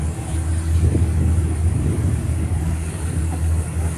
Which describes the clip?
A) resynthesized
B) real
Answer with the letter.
A